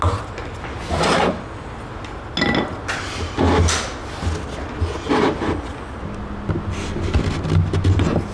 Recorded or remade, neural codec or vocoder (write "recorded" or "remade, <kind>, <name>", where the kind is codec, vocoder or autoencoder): recorded